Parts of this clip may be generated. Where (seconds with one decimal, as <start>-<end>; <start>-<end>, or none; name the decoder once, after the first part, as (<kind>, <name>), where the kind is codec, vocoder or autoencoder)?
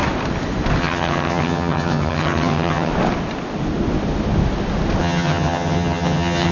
0.8-2.9 (vocoder, HiFi-GAN); 5.0-6.5